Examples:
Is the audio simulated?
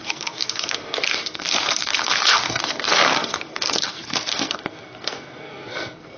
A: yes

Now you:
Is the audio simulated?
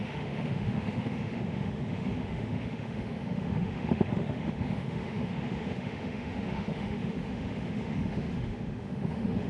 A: yes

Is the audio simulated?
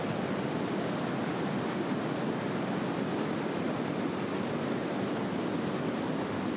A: no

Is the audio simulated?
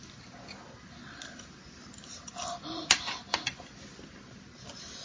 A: no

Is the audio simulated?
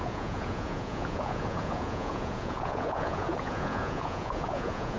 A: yes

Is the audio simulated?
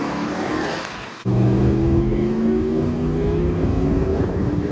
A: yes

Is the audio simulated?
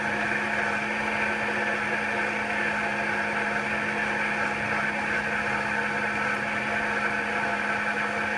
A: no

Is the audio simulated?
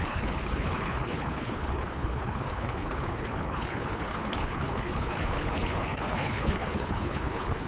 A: yes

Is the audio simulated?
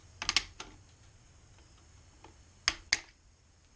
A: no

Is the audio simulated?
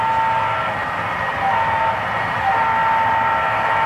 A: no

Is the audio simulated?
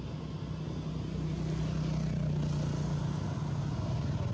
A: no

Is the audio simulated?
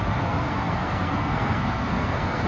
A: yes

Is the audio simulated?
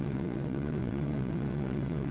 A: yes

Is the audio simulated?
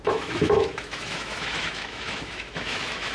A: yes